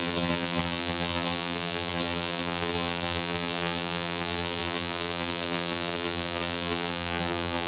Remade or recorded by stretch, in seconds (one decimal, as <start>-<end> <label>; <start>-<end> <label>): 0.0-7.7 remade